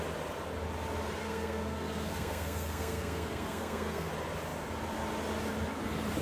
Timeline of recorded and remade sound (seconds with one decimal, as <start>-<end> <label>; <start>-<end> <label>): 0.0-1.2 recorded; 1.2-4.1 remade; 4.1-6.2 recorded